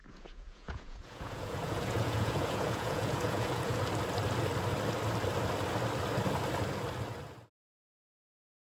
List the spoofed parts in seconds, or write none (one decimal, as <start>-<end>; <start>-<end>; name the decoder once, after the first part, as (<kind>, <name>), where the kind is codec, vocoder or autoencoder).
0.0-3.8 (vocoder, Vocos)